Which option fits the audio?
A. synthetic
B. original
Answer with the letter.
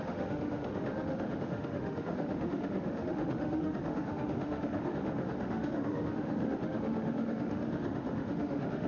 A